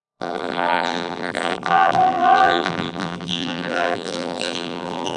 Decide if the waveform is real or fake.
fake